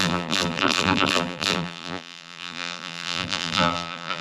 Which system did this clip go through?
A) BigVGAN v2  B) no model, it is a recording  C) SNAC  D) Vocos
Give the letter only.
A